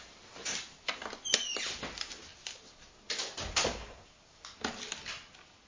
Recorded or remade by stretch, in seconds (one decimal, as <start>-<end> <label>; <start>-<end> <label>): 0.0-3.7 recorded; 3.7-4.4 remade; 4.4-5.7 recorded